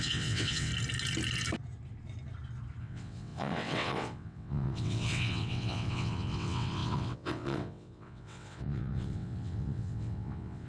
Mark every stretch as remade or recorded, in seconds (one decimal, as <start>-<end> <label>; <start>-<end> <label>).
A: 0.0-0.7 remade; 0.7-2.8 recorded; 2.8-10.7 remade